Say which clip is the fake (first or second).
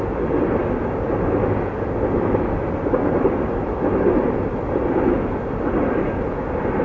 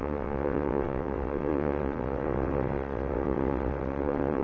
second